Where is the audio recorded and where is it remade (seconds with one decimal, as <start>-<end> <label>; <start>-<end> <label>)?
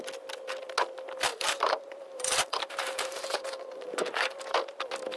0.0-1.3 recorded; 1.3-4.4 remade; 4.4-5.2 recorded